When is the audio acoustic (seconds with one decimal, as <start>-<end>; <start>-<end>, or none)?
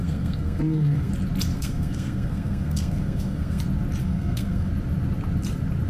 1.1-1.5; 3.6-4.0; 4.7-5.9